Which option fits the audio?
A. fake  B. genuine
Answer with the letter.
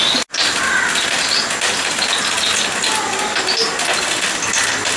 B